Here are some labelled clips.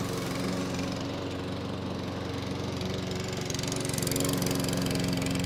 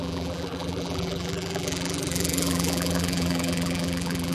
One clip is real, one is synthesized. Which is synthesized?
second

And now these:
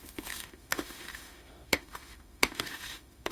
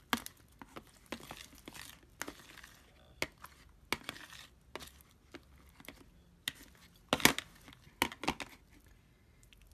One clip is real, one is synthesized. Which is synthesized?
first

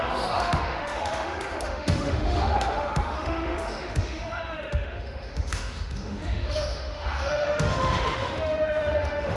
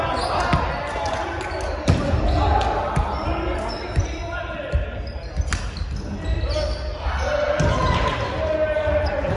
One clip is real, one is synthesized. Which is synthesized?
first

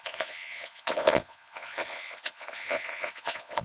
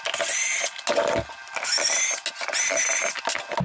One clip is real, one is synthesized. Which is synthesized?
first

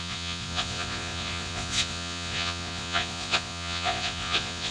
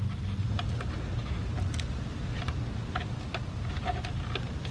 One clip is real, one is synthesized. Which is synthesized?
first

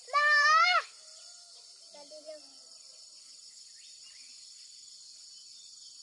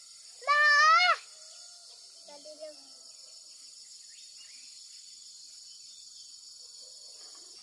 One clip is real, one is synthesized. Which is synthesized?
first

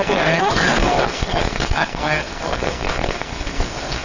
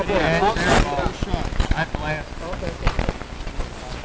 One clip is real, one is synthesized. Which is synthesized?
first